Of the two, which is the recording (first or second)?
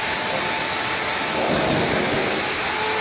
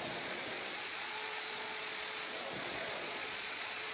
first